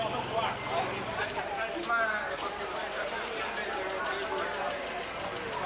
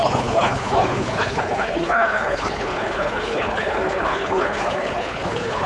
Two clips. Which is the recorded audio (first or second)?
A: first